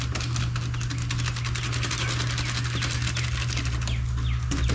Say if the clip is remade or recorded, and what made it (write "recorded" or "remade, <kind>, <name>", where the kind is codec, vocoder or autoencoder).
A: recorded